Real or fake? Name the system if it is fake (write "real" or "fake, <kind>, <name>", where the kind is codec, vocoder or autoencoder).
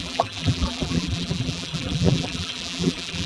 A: fake, vocoder, BigVGAN v2